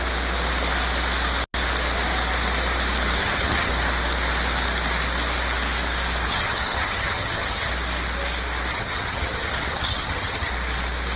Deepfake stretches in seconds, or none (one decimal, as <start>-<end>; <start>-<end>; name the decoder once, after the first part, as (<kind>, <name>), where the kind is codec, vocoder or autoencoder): 3.2-3.7 (vocoder, HiFi-GAN); 6.3-7.7; 8.7-10.5